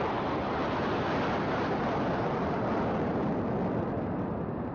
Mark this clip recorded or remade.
recorded